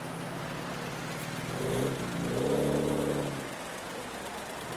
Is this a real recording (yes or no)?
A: yes